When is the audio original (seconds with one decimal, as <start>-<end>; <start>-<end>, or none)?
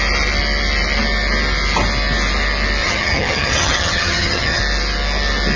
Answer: 0.0-2.8; 4.6-5.6